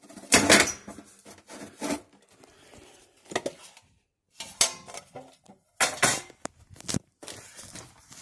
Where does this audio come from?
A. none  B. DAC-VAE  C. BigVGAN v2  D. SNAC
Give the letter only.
A